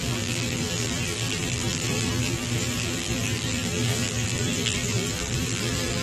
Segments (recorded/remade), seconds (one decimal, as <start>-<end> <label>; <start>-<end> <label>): 0.0-6.0 remade